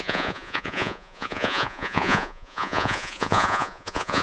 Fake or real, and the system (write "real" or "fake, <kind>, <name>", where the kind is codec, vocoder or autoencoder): fake, vocoder, Vocos